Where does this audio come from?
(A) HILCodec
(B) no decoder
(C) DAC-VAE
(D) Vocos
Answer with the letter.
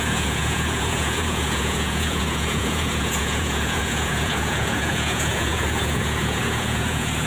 D